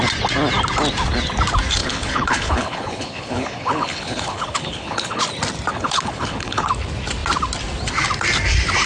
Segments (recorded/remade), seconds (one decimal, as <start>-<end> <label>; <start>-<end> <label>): 0.0-1.8 recorded; 1.8-5.2 remade; 5.2-5.7 recorded; 5.7-6.7 remade; 6.7-8.9 recorded